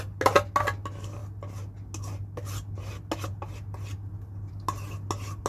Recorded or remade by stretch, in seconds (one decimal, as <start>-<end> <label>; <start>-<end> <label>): 0.0-5.5 recorded